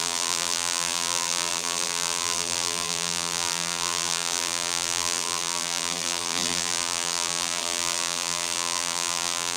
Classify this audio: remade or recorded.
remade